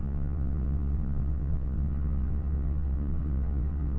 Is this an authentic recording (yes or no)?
no